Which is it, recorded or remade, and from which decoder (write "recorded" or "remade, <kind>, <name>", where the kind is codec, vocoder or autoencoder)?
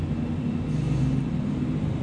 recorded